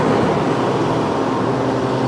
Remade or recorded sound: recorded